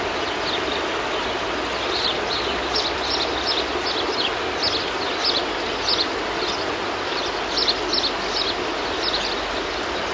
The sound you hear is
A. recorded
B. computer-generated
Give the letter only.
A